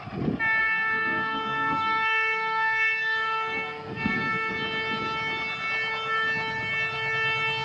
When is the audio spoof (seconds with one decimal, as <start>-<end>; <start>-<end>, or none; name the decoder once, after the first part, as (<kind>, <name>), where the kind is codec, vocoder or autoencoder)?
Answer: 0.6-4.5 (codec, SNAC)